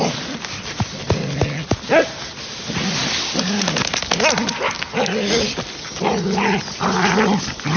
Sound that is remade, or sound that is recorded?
recorded